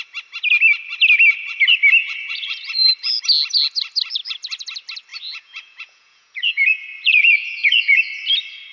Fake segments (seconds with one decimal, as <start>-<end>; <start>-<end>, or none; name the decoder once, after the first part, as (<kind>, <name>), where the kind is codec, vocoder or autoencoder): 2.0-2.9 (vocoder, Vocos); 5.1-8.0